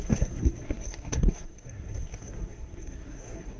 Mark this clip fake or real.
fake